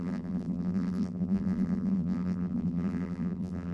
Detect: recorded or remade remade